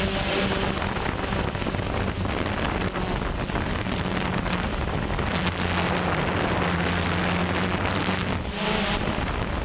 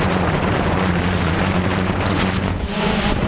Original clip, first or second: first